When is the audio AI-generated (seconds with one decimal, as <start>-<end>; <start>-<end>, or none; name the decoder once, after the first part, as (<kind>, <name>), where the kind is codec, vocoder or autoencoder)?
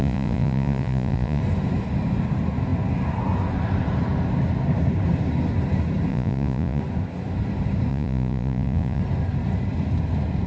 0.0-1.4 (vocoder, Vocos); 6.1-6.8; 7.9-9.0